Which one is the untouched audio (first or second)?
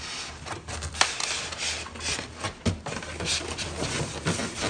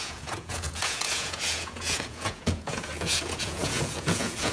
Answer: first